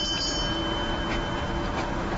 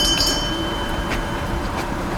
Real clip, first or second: first